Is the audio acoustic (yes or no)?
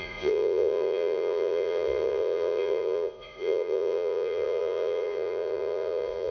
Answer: no